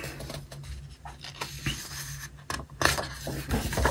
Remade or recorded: recorded